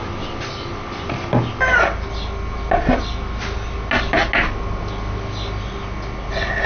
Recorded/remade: recorded